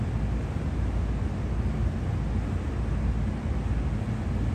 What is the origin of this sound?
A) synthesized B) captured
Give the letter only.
B